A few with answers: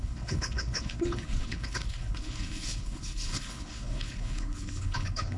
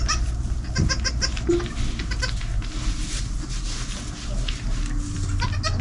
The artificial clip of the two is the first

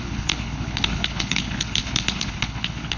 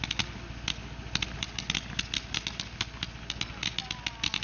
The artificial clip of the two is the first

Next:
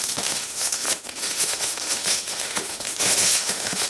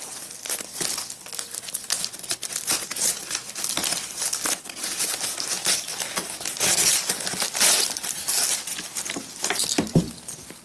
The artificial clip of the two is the first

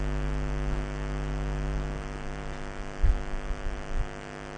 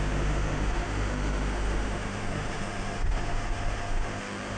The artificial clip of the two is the second